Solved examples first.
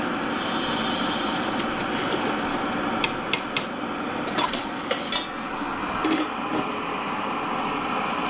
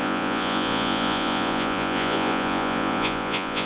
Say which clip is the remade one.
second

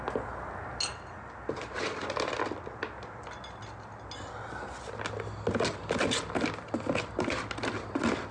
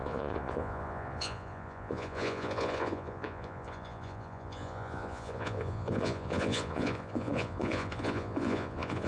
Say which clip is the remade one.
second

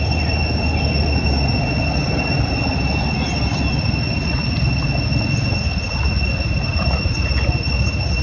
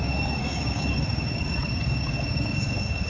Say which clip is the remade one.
second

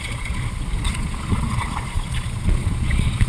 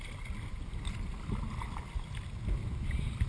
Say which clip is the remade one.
first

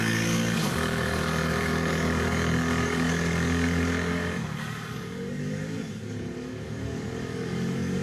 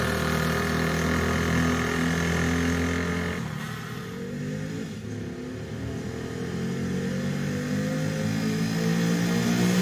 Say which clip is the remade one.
first